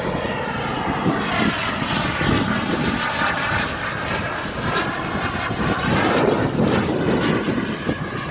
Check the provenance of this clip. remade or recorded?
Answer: recorded